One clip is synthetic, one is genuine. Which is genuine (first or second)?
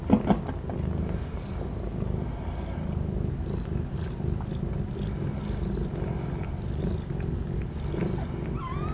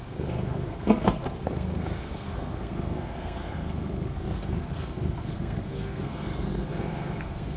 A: first